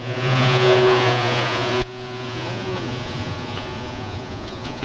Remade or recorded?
remade